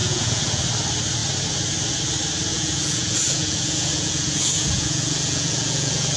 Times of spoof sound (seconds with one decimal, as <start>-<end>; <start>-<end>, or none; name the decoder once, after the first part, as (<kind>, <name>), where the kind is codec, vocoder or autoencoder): 0.0-0.6 (vocoder, Vocos); 2.5-6.2